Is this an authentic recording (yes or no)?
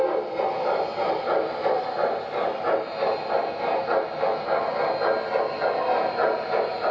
yes